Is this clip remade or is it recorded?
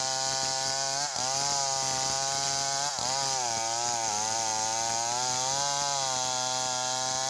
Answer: recorded